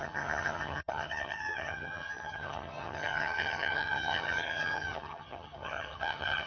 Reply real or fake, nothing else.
fake